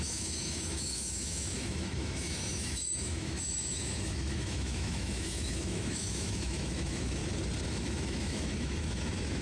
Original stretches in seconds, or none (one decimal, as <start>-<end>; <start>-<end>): 7.2-7.7